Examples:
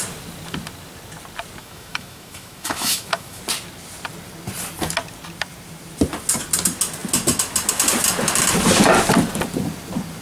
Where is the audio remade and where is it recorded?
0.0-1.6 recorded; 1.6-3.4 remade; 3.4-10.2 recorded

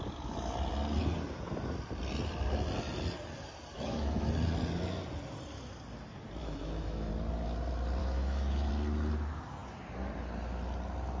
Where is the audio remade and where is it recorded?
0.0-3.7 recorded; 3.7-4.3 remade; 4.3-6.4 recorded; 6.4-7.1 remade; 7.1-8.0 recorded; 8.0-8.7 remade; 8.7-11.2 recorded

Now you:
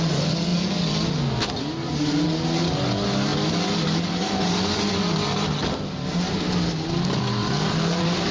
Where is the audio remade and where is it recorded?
0.0-8.3 recorded

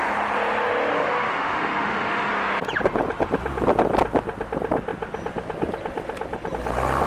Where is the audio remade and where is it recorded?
0.0-0.9 recorded; 0.9-2.3 remade; 2.3-7.1 recorded